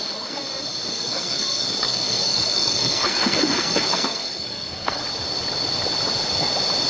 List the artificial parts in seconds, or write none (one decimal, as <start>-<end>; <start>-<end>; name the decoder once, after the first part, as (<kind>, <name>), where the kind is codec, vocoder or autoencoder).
0.0-0.4 (codec, SNAC); 0.9-5.0

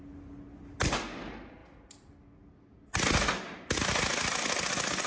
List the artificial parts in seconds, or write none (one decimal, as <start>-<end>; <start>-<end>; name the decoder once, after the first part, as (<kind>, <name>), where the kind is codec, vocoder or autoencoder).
none